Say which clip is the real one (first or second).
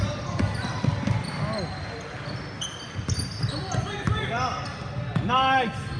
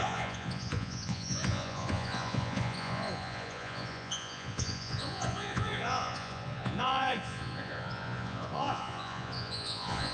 first